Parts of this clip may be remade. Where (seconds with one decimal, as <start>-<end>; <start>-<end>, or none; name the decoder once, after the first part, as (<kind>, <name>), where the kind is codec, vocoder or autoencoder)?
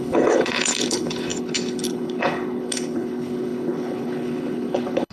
0.0-5.1 (codec, HILCodec)